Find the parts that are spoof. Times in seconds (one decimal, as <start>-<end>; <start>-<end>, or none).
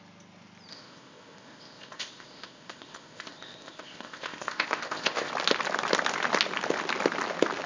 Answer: 0.7-5.3